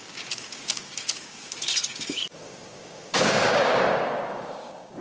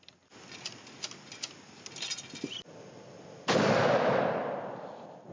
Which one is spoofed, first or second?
first